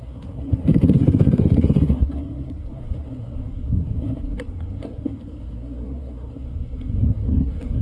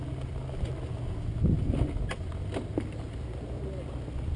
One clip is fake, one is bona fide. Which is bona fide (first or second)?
second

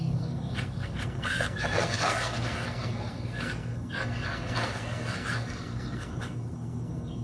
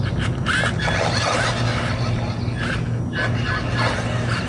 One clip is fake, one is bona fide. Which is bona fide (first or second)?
second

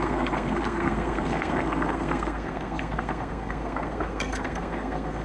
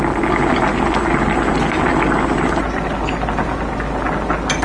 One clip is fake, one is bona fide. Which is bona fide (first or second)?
second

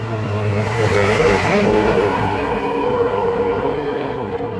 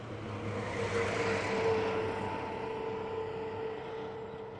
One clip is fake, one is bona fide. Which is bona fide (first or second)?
second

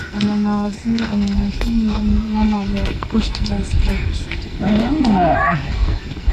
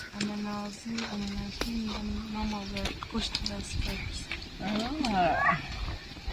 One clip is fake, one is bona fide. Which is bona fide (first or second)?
second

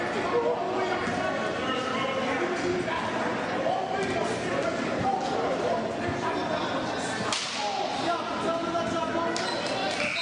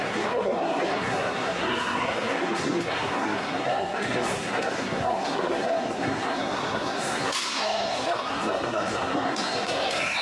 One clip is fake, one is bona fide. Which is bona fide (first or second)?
first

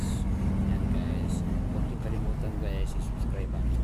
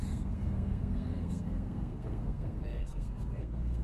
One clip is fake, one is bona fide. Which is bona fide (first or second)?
first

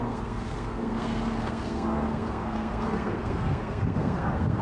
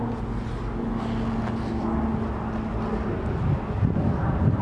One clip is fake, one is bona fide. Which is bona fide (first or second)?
second